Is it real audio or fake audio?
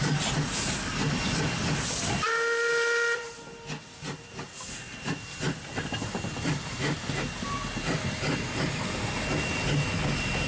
real